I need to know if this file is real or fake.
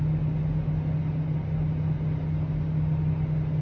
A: real